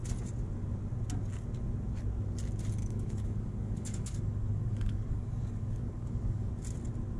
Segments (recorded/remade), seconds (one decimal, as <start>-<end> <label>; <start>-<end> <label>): 0.0-2.8 recorded; 2.8-6.5 remade; 6.5-7.2 recorded